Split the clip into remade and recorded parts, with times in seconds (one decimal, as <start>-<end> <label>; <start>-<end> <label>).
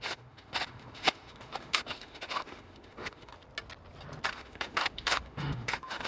0.0-3.3 remade; 3.3-4.3 recorded; 4.3-6.1 remade